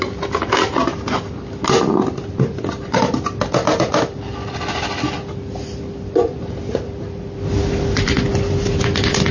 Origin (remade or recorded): recorded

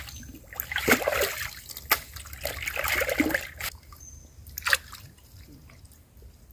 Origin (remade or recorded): recorded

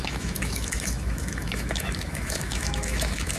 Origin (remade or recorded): remade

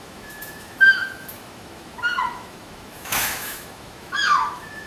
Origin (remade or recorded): remade